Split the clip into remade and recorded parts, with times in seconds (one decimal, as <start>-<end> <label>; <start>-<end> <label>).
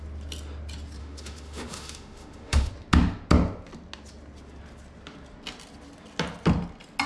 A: 0.0-1.0 recorded; 1.0-2.7 remade; 2.7-7.1 recorded